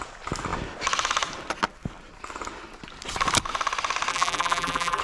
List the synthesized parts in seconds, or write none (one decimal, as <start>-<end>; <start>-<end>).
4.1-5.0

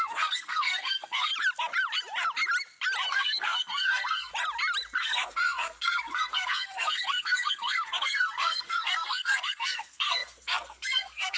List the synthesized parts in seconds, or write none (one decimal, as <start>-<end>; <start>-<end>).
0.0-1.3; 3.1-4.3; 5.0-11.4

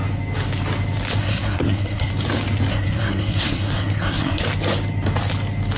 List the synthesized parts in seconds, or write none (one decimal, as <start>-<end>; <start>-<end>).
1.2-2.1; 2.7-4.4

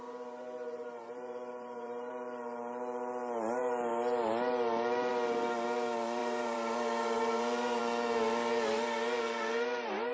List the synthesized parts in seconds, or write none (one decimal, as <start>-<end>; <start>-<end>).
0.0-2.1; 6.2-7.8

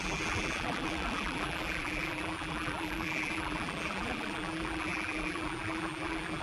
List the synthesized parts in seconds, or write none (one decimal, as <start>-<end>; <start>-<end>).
0.0-6.4